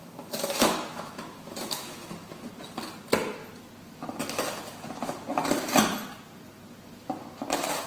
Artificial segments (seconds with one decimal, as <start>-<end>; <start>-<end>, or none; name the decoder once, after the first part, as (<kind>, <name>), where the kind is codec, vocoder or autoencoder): 0.0-2.5 (autoencoder, DAC-VAE)